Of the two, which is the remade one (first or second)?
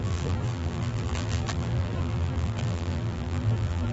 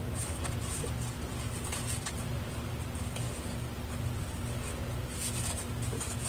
first